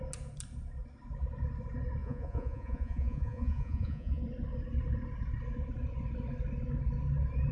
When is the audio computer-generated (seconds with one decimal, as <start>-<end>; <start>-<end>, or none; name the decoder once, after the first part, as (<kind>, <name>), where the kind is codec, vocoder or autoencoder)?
2.0-4.2 (vocoder, Vocos)